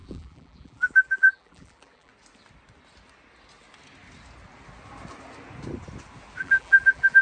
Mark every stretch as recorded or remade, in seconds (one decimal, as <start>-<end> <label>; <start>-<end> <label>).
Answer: 0.0-2.1 remade; 2.1-6.4 recorded; 6.4-7.2 remade